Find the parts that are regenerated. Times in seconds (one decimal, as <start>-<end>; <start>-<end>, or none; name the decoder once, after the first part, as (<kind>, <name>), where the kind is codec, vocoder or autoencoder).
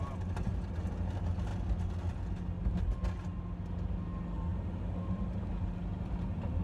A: none